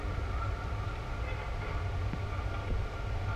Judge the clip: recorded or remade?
recorded